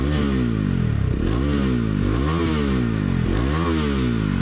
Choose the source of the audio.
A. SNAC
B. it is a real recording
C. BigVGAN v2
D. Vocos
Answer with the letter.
B